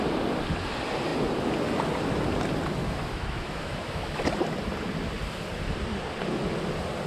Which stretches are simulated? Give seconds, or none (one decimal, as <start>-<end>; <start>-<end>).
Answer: 2.8-4.2